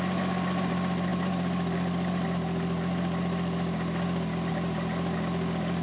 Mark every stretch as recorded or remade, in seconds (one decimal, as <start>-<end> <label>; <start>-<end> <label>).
0.0-5.8 recorded